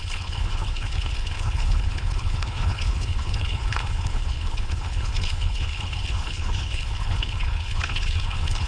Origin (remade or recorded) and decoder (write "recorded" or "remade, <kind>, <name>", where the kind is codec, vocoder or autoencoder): remade, codec, HILCodec